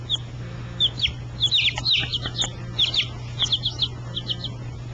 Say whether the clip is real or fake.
real